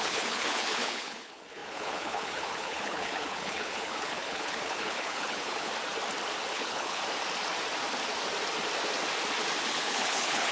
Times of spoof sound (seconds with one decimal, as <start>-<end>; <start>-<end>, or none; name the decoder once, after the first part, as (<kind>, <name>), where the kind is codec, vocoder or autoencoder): 0.0-5.7 (codec, HILCodec); 6.5-7.0; 9.7-10.5